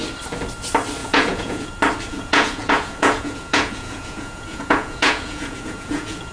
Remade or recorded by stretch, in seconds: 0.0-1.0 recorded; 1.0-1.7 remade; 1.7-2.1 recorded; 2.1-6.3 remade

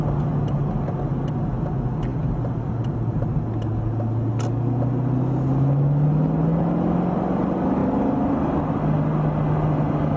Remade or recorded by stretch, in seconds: 0.0-10.2 recorded

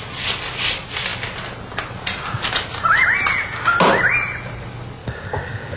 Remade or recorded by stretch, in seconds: 0.0-5.0 recorded; 5.0-5.8 remade

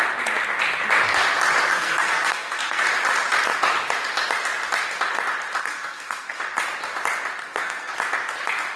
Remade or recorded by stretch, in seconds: 0.0-1.7 recorded; 1.7-2.8 remade; 2.8-5.6 recorded; 5.6-6.4 remade; 6.4-7.4 recorded; 7.4-7.9 remade; 7.9-8.8 recorded

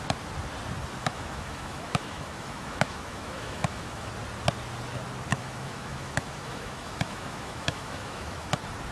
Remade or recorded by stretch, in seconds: 0.0-1.0 recorded; 1.0-4.1 remade; 4.1-5.3 recorded; 5.3-8.5 remade; 8.5-8.9 recorded

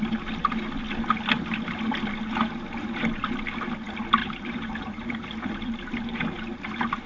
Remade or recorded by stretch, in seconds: 0.0-4.2 recorded; 4.2-6.2 remade; 6.2-7.1 recorded

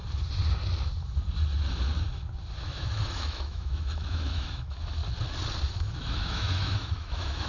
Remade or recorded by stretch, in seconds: 0.0-2.6 recorded; 2.6-5.0 remade; 5.0-5.7 recorded; 5.7-7.5 remade

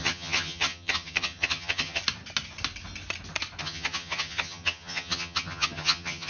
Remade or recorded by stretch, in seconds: 0.0-2.0 remade; 2.0-3.6 recorded; 3.6-6.3 remade